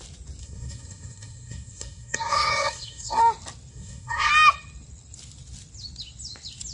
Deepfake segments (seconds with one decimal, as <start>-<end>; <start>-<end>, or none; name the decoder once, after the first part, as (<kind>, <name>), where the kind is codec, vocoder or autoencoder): 0.4-3.2 (codec, SNAC); 3.7-4.3